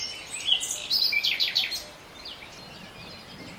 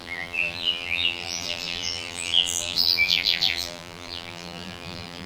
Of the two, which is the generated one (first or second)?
second